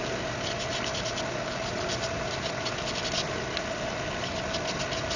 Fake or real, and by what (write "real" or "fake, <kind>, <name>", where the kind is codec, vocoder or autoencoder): real